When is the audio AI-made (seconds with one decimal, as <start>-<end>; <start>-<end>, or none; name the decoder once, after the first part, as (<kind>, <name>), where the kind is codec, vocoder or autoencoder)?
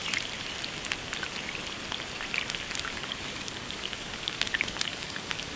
3.0-5.6 (codec, DAC)